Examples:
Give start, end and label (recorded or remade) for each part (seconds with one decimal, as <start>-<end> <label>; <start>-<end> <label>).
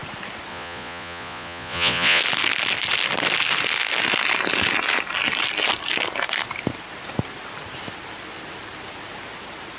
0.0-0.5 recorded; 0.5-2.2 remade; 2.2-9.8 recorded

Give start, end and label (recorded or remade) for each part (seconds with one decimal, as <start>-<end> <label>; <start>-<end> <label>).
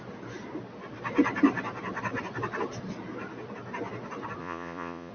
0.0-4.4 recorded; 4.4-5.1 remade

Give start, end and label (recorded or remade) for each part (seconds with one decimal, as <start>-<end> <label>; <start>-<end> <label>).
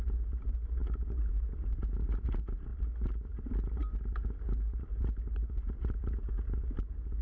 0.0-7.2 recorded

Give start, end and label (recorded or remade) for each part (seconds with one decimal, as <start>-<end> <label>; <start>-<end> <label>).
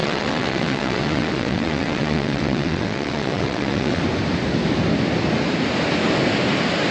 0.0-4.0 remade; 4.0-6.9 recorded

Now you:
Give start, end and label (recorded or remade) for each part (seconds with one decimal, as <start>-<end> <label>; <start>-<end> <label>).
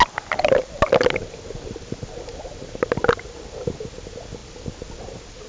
0.0-5.5 recorded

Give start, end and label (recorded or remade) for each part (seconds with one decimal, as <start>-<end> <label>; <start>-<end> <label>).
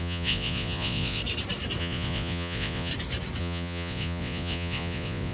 0.0-1.2 remade; 1.2-1.8 recorded; 1.8-2.9 remade; 2.9-3.4 recorded; 3.4-5.3 remade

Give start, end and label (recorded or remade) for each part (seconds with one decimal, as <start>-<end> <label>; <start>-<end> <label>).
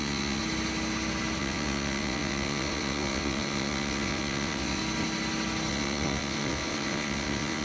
0.0-0.4 remade; 0.4-1.4 recorded; 1.4-4.8 remade; 4.8-5.7 recorded; 5.7-7.6 remade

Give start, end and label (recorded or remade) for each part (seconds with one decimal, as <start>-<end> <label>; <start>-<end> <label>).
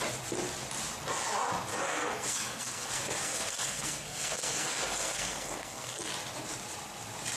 0.0-1.7 recorded; 1.7-6.1 remade; 6.1-7.4 recorded